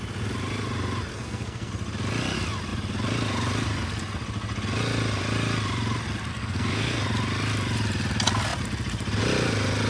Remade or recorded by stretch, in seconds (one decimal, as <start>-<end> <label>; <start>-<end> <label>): 0.0-1.1 recorded; 1.1-1.7 remade; 1.7-6.3 recorded; 6.3-7.0 remade; 7.0-9.9 recorded